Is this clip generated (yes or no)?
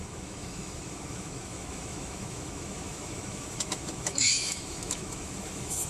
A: yes